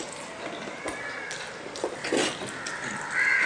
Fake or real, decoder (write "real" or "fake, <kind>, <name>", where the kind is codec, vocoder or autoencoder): real